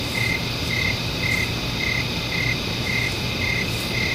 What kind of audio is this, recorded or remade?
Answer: recorded